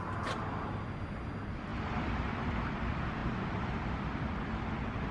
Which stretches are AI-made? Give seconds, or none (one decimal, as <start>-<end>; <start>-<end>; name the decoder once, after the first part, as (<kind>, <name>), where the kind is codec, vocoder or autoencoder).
none